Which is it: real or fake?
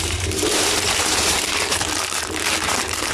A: fake